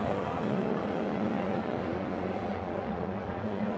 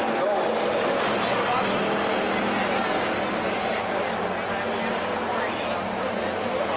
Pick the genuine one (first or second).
second